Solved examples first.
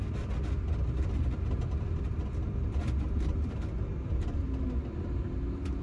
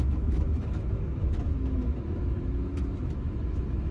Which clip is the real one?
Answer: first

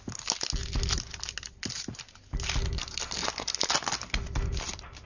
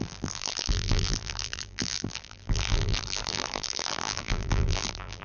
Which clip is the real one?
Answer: first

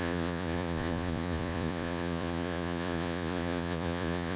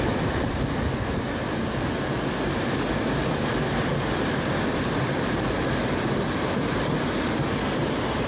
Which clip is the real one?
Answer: second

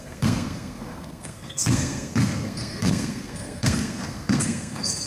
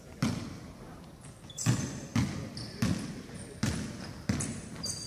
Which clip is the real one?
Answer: second